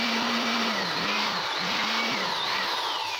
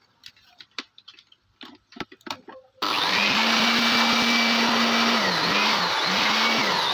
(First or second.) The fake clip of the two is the first